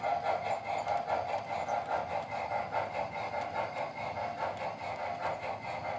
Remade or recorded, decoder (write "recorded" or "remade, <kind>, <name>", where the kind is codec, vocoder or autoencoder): recorded